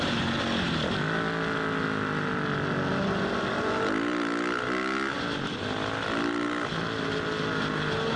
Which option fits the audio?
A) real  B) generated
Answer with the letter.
A